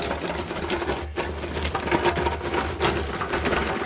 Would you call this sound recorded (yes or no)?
yes